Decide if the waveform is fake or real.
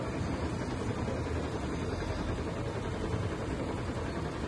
real